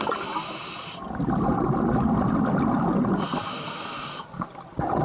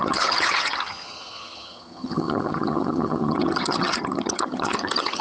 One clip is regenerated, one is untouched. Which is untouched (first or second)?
first